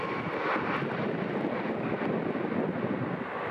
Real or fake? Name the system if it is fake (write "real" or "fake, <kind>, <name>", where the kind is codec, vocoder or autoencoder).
real